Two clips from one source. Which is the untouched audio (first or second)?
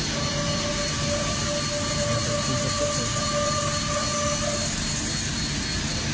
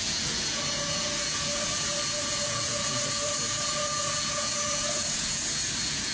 first